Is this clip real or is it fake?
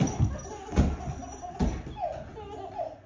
real